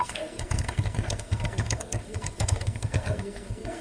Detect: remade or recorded remade